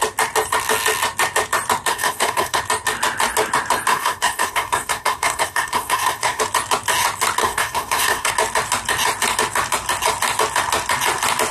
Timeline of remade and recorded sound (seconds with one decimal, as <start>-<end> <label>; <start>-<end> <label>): 0.0-1.9 recorded; 1.9-2.6 remade; 2.6-3.9 recorded; 3.9-6.4 remade; 6.4-7.4 recorded; 7.4-8.3 remade; 8.3-11.5 recorded